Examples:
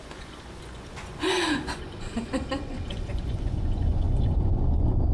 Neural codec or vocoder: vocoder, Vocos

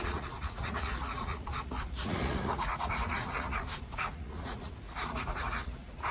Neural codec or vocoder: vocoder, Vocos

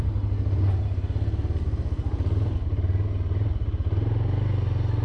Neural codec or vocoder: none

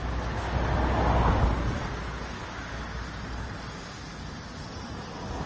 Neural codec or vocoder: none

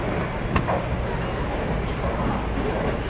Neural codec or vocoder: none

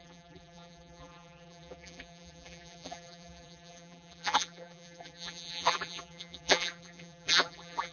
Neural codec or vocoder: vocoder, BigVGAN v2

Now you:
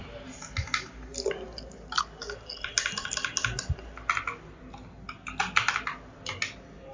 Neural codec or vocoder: none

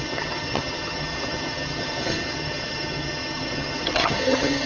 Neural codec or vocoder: vocoder, HiFi-GAN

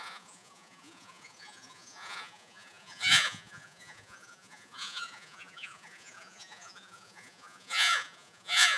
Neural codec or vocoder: vocoder, Vocos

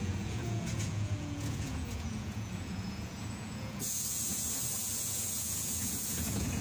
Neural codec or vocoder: vocoder, Vocos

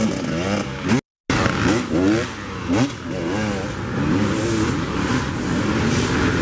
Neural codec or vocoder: none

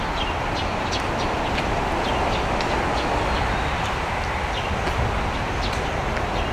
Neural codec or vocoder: none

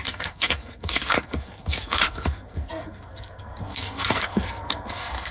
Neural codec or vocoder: codec, SNAC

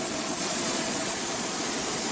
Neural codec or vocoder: vocoder, Vocos